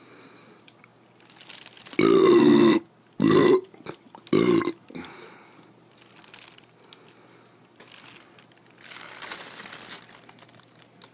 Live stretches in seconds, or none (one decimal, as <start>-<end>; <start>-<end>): 0.0-11.1